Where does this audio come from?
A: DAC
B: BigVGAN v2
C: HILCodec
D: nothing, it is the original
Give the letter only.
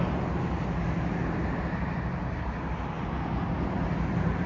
D